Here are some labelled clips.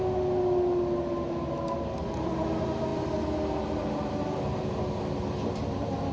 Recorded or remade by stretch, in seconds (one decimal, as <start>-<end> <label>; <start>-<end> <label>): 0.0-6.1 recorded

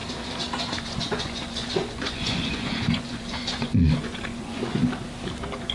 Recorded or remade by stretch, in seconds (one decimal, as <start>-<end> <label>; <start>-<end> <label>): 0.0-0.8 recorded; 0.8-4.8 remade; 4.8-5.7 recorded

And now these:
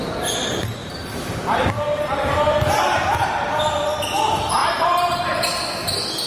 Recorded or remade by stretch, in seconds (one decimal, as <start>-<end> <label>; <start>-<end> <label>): 0.0-0.8 recorded; 0.8-3.6 remade; 3.6-4.6 recorded; 4.6-5.2 remade; 5.2-6.3 recorded

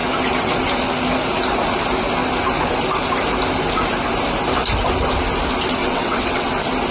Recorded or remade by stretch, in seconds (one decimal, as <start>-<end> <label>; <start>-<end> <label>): 0.0-5.8 recorded; 5.8-6.5 remade; 6.5-6.9 recorded